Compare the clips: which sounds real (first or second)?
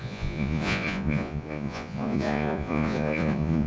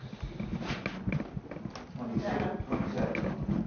second